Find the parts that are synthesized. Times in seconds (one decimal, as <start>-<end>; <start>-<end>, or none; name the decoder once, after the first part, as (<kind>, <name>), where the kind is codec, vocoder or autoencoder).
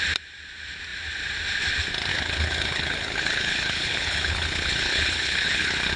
2.1-6.0 (codec, HILCodec)